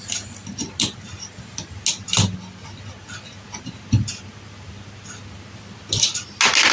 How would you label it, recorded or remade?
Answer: recorded